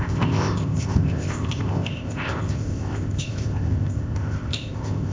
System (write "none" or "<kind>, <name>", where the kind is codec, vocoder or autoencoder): codec, ZipCodec